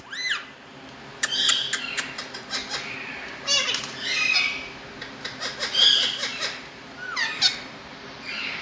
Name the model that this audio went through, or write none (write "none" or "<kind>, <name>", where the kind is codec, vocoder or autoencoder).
none